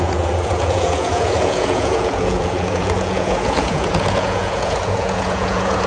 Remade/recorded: remade